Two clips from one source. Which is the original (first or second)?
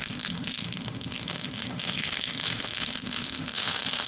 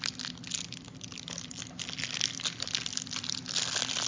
second